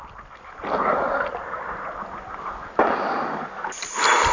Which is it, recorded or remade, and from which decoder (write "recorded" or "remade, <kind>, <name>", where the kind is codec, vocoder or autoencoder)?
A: recorded